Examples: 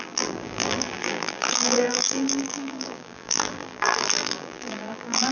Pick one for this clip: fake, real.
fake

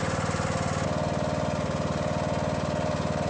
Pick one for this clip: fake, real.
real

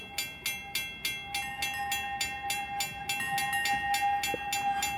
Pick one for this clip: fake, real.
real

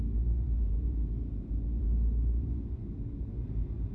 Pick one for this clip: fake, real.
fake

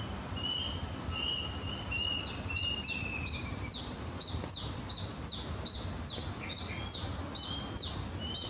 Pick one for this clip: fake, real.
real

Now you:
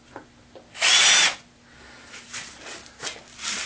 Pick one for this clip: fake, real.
real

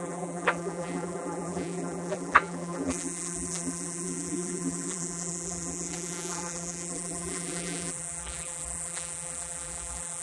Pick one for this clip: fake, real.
fake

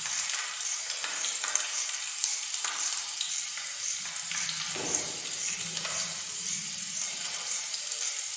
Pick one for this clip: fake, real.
fake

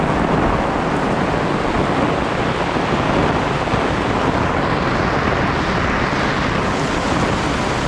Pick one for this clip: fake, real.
real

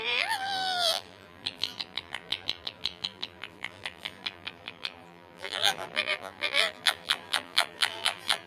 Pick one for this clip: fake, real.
fake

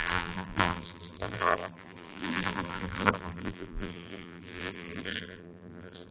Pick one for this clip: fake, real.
fake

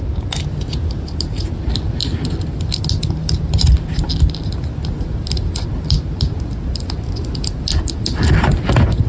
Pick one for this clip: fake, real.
real